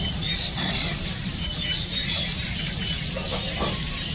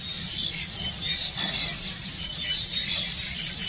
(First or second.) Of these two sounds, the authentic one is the second